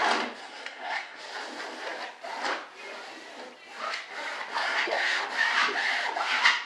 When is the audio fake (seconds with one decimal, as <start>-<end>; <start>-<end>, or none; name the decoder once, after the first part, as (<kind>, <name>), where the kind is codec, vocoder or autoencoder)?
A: 0.4-1.2 (codec, SNAC); 4.5-5.2